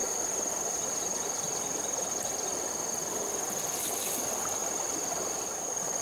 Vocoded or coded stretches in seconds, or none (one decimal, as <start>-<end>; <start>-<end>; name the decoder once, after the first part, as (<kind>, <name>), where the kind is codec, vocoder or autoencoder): none